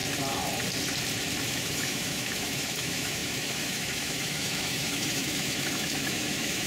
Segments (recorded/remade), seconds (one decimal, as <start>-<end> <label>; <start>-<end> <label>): 0.0-1.4 recorded; 1.4-6.7 remade